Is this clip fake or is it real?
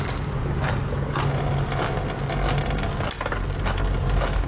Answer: real